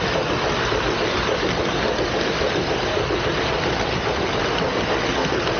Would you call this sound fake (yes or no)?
no